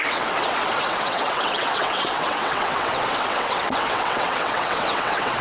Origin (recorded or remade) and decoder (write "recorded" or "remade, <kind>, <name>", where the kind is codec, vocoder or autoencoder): remade, vocoder, WaveNeXt